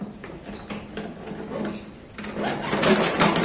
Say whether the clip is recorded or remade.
recorded